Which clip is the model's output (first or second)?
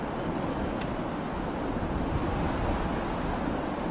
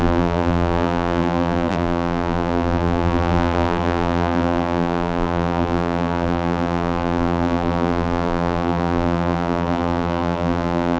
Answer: second